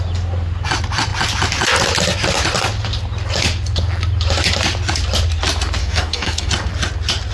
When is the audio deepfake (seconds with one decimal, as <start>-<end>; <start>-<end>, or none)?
5.8-6.5